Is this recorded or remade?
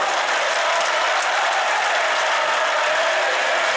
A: recorded